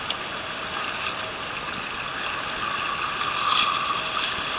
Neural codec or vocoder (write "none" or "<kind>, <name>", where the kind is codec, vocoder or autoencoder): none